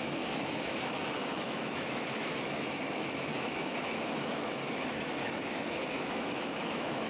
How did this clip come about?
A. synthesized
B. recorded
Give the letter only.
A